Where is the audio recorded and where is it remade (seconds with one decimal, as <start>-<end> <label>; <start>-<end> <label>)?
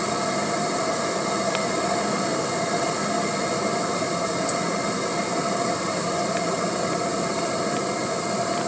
0.0-8.7 recorded